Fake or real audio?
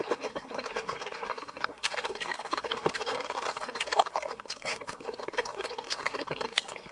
fake